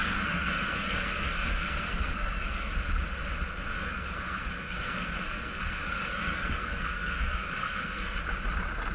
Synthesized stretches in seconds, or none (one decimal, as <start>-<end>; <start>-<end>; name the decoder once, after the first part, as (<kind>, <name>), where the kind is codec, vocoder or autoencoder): 0.0-2.7 (codec, SNAC); 3.7-8.2